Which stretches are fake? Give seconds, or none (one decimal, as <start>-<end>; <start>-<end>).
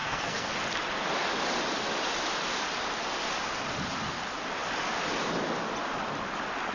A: 0.0-0.5